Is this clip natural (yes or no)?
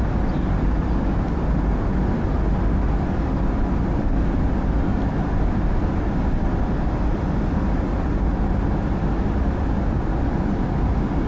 yes